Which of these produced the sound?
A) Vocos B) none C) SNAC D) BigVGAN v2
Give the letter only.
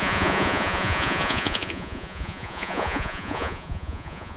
A